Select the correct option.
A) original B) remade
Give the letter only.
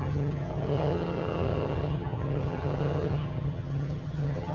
B